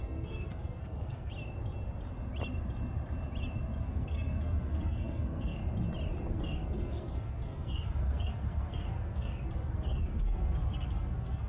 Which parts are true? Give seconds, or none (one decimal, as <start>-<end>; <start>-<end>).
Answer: 1.3-3.8; 5.6-6.3